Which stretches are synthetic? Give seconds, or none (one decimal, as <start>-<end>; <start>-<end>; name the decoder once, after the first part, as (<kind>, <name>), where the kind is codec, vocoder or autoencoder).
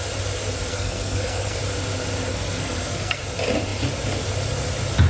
0.7-1.6 (codec, SNAC); 2.3-3.2